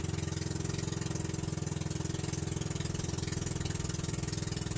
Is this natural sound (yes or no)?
yes